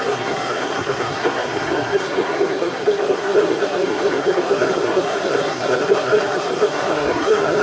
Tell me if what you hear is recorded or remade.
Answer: remade